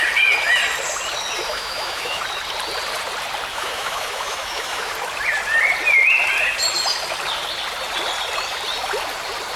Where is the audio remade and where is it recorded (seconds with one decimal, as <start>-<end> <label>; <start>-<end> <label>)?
0.0-1.5 recorded; 1.5-2.2 remade; 2.2-3.5 recorded; 3.5-4.9 remade; 4.9-9.6 recorded